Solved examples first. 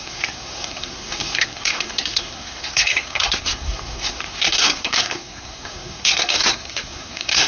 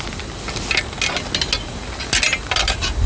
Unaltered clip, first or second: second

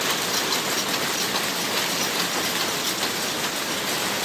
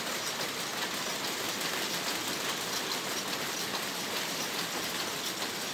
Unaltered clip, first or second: first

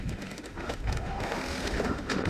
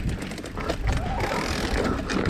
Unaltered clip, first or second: second